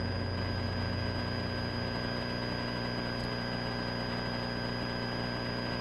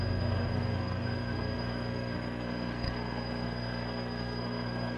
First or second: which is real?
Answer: first